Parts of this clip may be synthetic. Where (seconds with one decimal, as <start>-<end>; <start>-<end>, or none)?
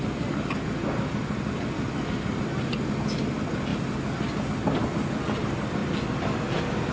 none